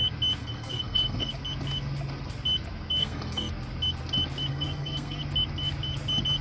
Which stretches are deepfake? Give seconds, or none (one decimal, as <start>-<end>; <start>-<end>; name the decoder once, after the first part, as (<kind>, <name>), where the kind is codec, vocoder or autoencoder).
0.4-1.3 (codec, SNAC); 3.0-3.5; 4.5-5.2